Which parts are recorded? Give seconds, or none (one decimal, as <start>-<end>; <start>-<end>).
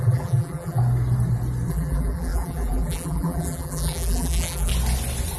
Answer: 0.8-1.7; 4.7-5.4